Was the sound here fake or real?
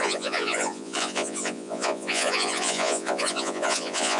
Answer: fake